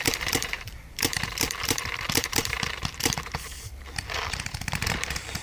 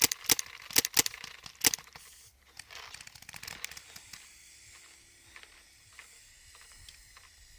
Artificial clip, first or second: first